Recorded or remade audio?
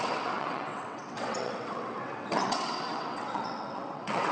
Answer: remade